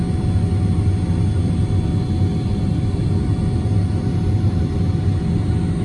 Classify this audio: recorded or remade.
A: recorded